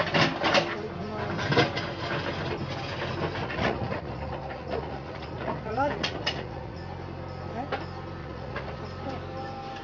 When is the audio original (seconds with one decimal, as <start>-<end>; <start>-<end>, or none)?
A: 0.0-3.4; 6.8-8.2; 8.8-9.8